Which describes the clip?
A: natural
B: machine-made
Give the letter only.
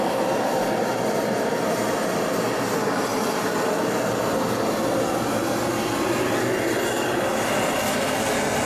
A